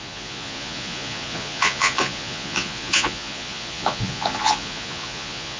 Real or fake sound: fake